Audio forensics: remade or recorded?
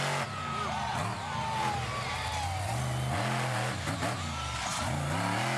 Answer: recorded